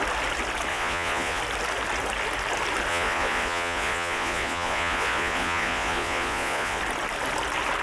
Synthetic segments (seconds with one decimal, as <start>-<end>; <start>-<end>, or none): 0.7-1.4; 2.9-6.8